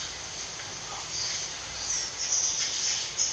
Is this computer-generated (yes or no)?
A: yes